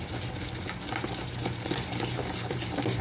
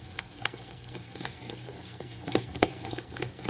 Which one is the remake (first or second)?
second